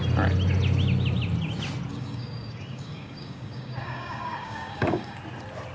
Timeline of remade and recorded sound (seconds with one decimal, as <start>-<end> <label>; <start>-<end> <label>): 0.0-1.9 recorded; 1.9-5.2 remade; 5.2-5.7 recorded